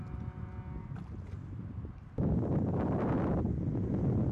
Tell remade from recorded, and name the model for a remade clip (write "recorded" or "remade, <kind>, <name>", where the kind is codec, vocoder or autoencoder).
recorded